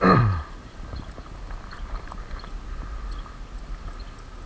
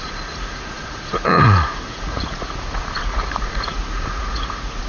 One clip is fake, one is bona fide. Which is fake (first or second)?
second